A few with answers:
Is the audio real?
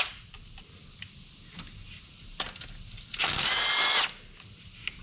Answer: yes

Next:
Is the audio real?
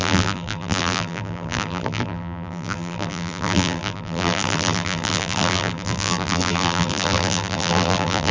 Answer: no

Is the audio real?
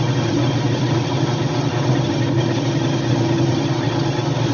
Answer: yes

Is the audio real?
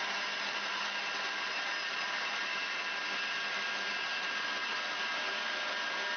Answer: yes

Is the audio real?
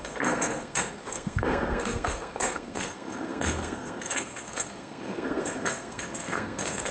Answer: no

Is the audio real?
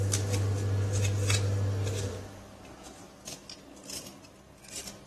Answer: yes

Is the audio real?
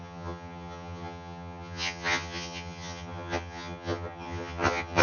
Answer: no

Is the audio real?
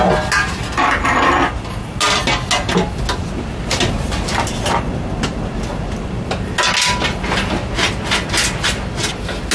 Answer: yes